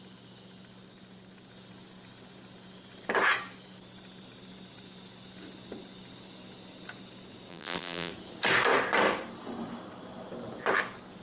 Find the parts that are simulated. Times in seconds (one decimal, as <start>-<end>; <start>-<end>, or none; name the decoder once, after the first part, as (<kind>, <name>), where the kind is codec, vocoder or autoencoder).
7.5-8.1 (vocoder, BigVGAN v2)